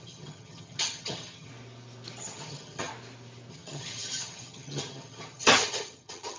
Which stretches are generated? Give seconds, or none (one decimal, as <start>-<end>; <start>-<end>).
0.0-1.5; 2.2-2.9; 3.5-6.4

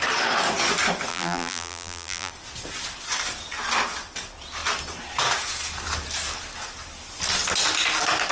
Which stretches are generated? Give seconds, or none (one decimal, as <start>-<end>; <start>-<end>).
1.1-2.3